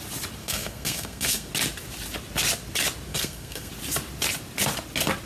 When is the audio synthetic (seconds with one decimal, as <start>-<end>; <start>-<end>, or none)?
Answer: 0.4-1.5; 3.1-3.7